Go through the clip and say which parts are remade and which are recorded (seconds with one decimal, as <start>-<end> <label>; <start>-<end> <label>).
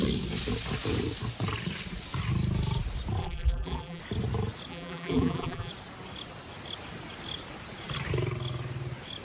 0.0-3.2 recorded; 3.2-4.0 remade; 4.0-4.7 recorded; 4.7-5.7 remade; 5.7-9.2 recorded